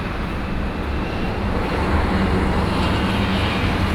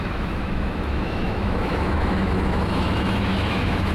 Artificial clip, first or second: second